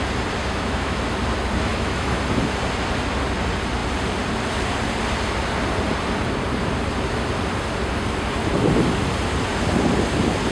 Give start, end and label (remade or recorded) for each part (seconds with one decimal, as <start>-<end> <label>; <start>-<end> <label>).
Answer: 0.0-0.4 recorded; 0.4-1.0 remade; 1.0-1.7 recorded; 1.7-2.2 remade; 2.2-10.5 recorded